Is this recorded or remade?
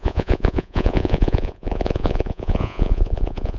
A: remade